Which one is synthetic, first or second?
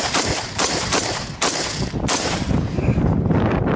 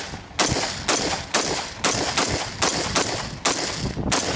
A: first